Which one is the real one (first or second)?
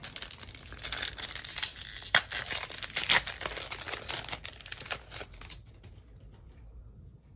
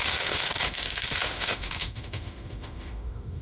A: first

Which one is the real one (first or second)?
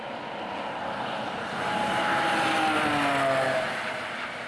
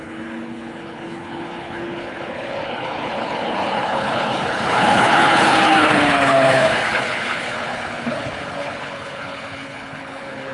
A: first